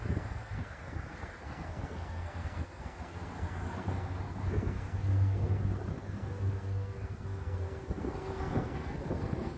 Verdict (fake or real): fake